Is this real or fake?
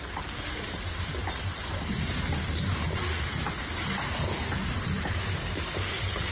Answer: real